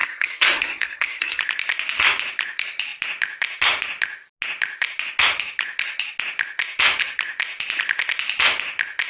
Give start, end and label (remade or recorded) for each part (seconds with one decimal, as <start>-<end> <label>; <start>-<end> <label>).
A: 0.0-1.4 remade; 1.4-9.1 recorded